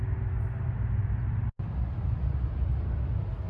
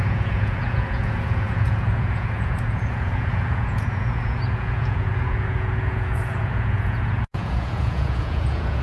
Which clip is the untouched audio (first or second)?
first